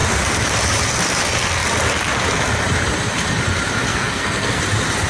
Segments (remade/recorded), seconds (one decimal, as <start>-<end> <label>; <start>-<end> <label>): 0.0-3.9 recorded; 3.9-4.6 remade; 4.6-5.1 recorded